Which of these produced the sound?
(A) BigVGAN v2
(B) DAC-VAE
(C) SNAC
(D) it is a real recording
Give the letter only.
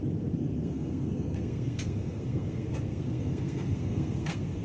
C